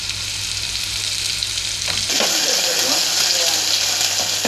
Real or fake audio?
real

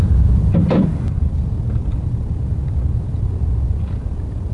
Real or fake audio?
fake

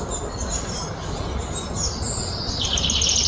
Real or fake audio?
real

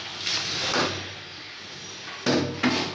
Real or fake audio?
real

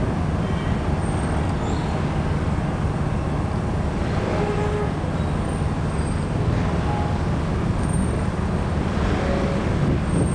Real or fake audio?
real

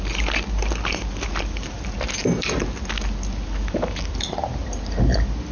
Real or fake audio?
real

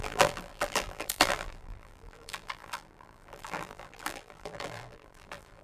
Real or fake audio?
fake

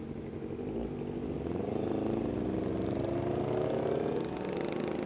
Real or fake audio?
real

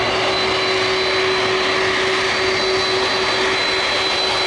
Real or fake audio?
real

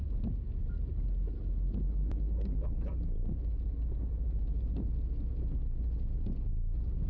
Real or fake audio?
real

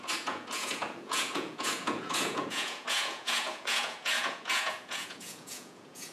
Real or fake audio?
fake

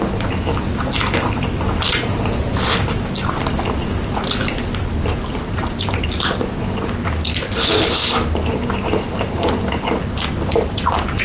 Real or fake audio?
real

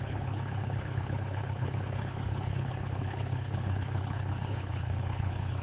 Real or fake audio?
fake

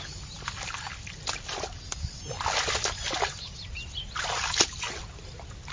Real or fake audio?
real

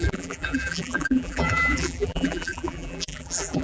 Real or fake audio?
fake